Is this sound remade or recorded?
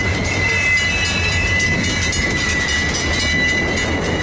recorded